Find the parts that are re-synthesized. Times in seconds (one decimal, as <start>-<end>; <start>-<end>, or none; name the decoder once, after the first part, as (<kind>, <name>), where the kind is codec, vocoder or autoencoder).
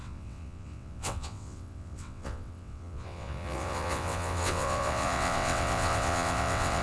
0.0-6.8 (vocoder, WaveNeXt)